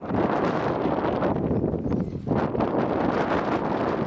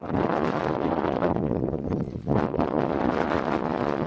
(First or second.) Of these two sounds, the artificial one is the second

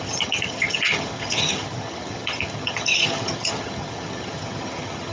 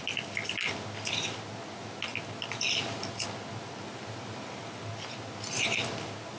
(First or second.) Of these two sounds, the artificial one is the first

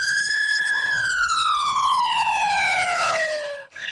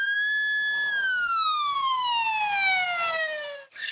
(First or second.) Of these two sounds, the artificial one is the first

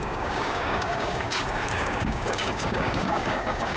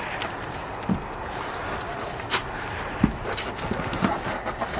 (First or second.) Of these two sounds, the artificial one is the first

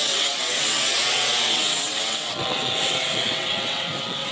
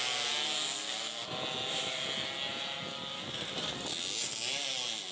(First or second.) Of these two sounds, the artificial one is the first